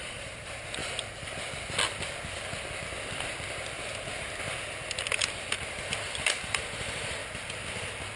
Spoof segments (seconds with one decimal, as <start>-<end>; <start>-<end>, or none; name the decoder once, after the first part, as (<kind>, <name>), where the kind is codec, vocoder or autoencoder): 0.0-0.8 (vocoder, BigVGAN v2); 5.7-7.2